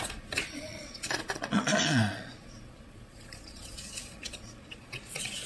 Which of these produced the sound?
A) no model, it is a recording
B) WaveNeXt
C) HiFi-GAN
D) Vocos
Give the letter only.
D